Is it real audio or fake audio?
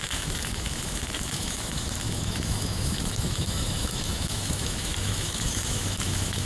fake